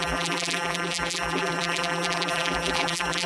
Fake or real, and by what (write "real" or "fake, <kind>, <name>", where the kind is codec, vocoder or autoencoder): fake, vocoder, BigVGAN v2